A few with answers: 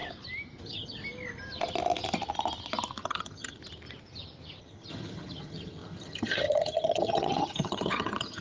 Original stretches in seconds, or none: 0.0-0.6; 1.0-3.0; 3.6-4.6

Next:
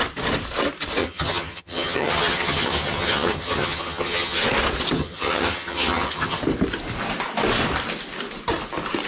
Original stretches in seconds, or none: 0.0-1.0; 4.4-5.0; 6.4-9.1

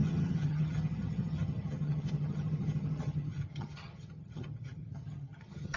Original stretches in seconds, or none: none

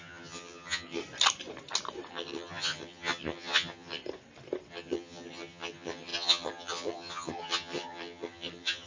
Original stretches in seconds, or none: 1.0-2.1; 4.0-4.7

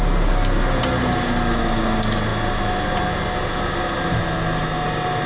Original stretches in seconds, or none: 0.0-5.3

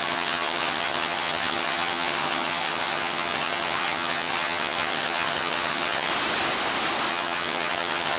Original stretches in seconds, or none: 6.1-7.1

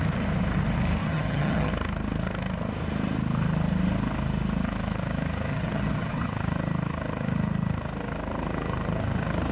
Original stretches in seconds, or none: 0.0-1.0; 1.7-5.5; 6.3-9.5

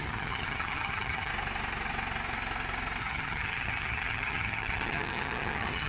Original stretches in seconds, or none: 1.3-3.0